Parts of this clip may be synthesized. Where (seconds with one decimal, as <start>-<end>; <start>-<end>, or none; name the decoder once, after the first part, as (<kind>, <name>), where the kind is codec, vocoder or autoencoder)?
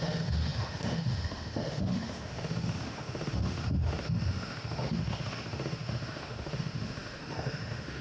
0.0-8.0 (autoencoder, DAC-VAE)